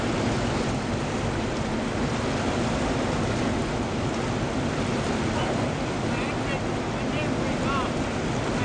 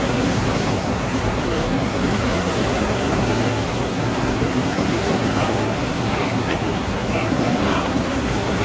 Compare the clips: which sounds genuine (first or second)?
first